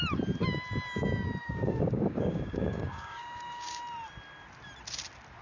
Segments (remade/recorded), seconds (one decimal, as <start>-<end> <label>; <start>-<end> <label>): 0.0-1.4 recorded; 1.4-3.8 remade; 3.8-5.4 recorded